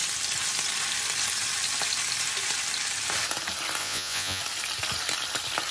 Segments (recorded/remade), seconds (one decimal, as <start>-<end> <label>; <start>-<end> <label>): 0.0-3.8 recorded; 3.8-4.4 remade; 4.4-5.7 recorded